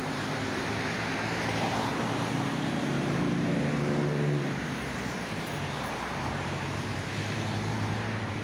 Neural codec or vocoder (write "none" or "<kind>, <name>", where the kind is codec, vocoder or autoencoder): vocoder, BigVGAN v2